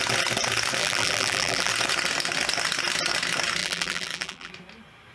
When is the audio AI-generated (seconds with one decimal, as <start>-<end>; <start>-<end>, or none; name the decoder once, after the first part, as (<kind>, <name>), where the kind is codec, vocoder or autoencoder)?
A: 0.8-1.7 (vocoder, BigVGAN v2); 3.6-4.5